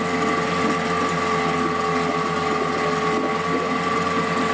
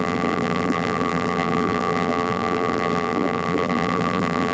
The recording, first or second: first